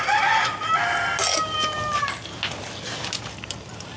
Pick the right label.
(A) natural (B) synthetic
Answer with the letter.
A